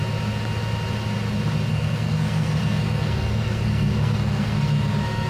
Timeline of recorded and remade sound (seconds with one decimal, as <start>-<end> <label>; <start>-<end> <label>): 0.0-1.7 recorded; 1.7-5.3 remade